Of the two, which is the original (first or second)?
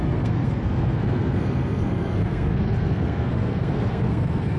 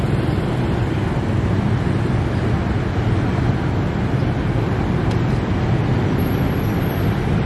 second